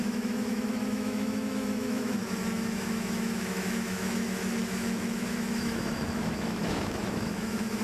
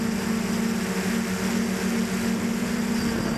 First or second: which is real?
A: second